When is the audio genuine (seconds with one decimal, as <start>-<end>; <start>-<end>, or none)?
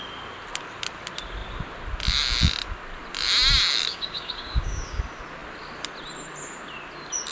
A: 0.0-3.9; 5.0-7.3